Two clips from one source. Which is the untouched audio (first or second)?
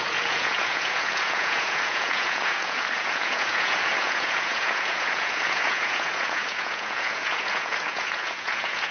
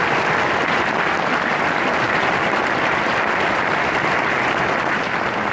second